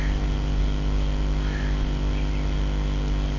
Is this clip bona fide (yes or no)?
yes